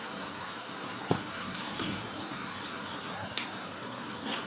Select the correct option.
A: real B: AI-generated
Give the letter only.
B